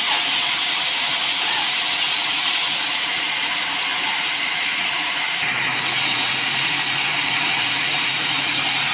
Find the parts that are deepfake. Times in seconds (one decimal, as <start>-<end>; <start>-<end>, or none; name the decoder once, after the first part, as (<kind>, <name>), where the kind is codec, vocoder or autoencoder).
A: 0.0-8.9 (vocoder, Vocos)